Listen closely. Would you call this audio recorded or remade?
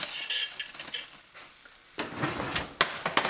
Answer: recorded